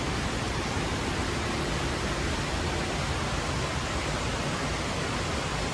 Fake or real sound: real